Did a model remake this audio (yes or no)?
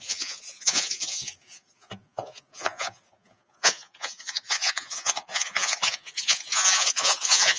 yes